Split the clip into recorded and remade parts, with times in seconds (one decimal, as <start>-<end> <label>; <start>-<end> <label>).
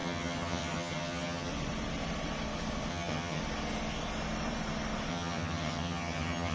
0.0-1.5 remade; 1.5-2.9 recorded; 2.9-3.4 remade; 3.4-5.1 recorded; 5.1-6.5 remade